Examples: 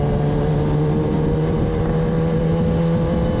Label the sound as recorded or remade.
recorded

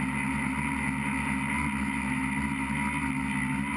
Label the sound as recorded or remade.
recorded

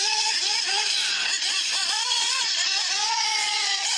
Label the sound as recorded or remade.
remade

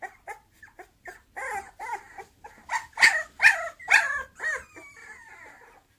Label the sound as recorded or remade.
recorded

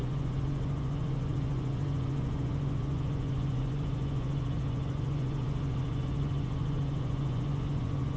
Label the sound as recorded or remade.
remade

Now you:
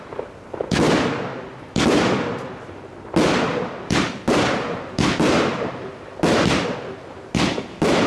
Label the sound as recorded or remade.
recorded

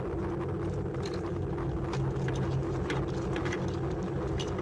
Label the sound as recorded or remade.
recorded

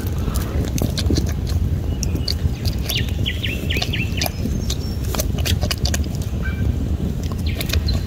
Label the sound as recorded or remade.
recorded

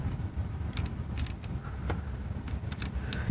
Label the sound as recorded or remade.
recorded